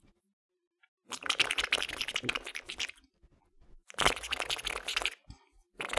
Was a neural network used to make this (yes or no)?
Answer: no